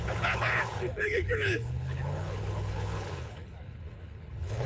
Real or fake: fake